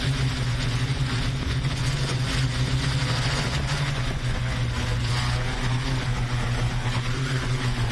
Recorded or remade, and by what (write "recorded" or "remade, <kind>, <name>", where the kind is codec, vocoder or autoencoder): remade, vocoder, Vocos